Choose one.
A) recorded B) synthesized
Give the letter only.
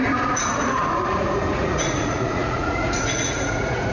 B